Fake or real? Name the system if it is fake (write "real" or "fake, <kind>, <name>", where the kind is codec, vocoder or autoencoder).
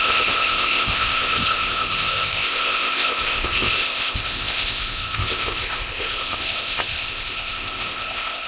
fake, codec, ZipCodec